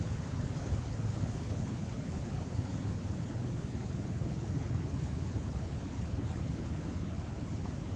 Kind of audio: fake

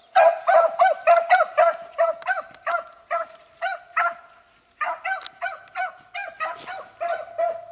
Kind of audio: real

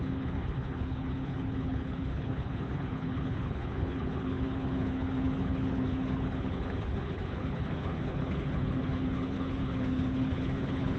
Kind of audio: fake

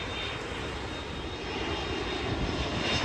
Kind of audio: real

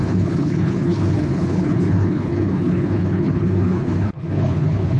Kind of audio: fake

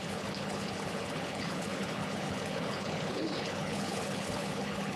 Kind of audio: fake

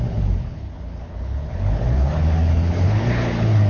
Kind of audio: fake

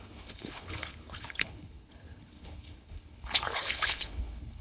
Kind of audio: fake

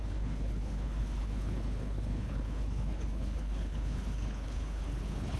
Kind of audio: fake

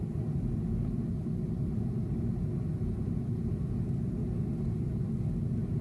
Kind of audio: real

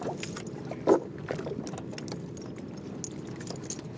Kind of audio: real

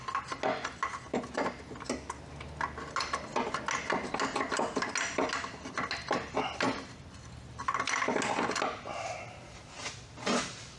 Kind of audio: real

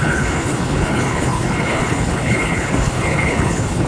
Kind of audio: fake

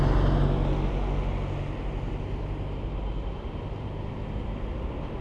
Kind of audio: real